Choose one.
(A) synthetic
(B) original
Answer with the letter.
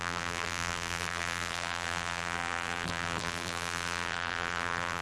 A